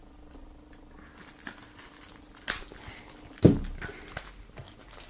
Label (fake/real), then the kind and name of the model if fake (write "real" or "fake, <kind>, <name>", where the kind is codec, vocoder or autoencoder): real